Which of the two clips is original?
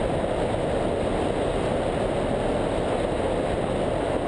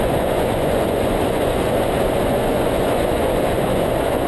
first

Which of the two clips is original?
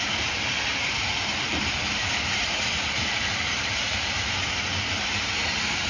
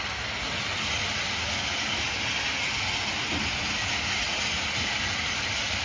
second